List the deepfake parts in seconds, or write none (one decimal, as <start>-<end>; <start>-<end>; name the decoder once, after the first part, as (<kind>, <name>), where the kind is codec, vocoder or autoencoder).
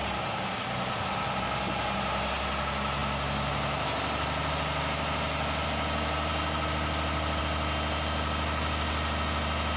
none